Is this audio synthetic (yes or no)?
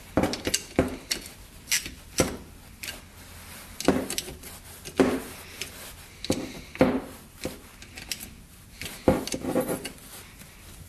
no